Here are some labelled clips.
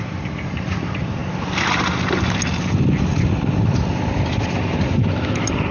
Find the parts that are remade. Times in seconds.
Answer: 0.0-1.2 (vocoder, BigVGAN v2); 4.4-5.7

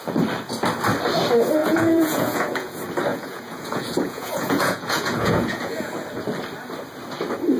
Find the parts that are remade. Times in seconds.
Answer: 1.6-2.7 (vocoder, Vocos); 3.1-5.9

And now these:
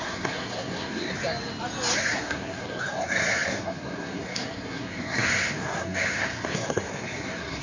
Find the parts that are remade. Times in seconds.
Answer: 0.0-1.1 (codec, SNAC); 2.0-7.6